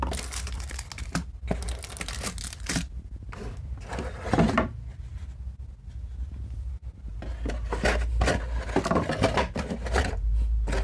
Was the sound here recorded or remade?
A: recorded